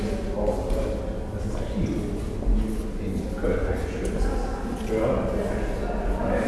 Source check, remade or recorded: recorded